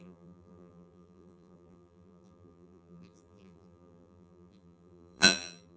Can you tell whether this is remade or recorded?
remade